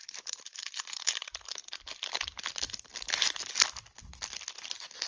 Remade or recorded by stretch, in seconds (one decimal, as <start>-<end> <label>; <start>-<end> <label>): 0.0-1.1 remade; 1.1-5.1 recorded